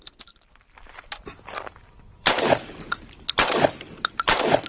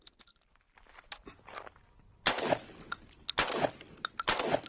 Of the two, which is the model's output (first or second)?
first